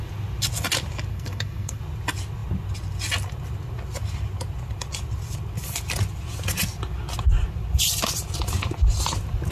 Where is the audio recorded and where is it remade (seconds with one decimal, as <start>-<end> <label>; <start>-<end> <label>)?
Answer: 0.0-1.1 recorded; 1.1-1.8 remade; 1.8-9.5 recorded